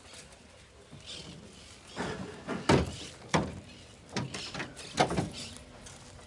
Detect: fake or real real